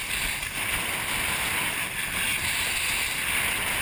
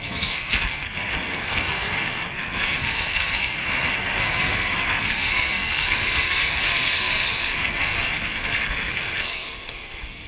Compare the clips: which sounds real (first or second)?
first